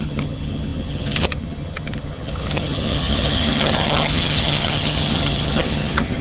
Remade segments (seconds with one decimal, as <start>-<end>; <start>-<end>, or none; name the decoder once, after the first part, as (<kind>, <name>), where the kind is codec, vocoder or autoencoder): 0.0-6.2 (vocoder, HiFi-GAN)